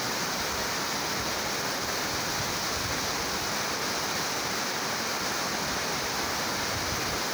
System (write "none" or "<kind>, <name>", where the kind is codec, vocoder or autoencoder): none